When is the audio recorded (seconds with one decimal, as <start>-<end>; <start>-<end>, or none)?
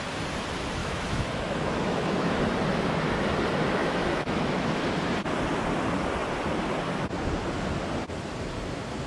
0.0-0.8; 2.4-3.8; 4.7-9.1